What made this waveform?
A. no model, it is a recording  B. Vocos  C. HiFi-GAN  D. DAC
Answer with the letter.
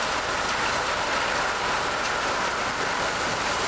A